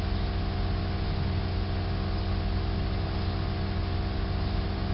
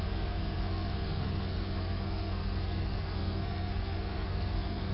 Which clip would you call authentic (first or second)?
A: first